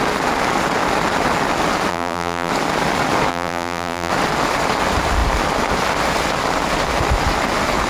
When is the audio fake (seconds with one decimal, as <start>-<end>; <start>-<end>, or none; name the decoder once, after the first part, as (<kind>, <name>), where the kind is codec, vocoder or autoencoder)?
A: 1.9-2.5 (vocoder, BigVGAN v2); 3.3-4.1